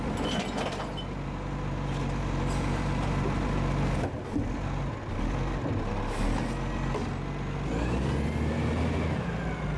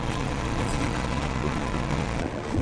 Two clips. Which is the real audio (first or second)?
first